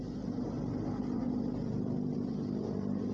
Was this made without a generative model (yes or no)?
yes